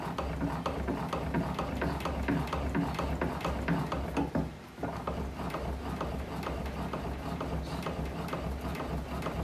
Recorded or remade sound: recorded